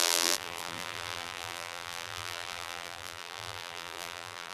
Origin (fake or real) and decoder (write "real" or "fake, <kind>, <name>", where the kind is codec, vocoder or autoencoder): fake, vocoder, BigVGAN v2